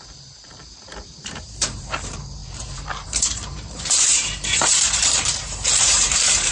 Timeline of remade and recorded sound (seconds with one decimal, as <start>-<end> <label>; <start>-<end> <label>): 0.0-6.5 remade